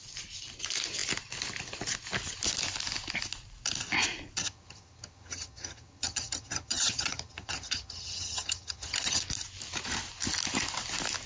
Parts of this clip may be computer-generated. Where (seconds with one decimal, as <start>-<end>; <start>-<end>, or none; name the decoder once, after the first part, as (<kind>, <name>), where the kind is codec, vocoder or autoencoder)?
4.4-9.2 (vocoder, HiFi-GAN)